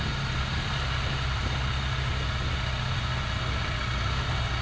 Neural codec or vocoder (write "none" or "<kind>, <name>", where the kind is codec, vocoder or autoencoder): none